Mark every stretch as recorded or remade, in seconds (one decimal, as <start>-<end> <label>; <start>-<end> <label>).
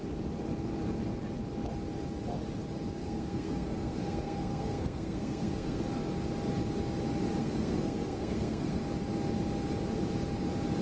0.0-3.0 recorded; 3.0-5.8 remade; 5.8-7.4 recorded; 7.4-8.8 remade; 8.8-10.8 recorded